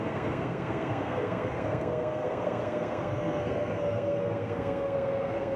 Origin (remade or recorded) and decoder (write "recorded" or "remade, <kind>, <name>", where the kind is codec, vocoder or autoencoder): remade, codec, SNAC